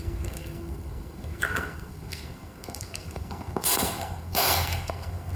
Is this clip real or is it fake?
fake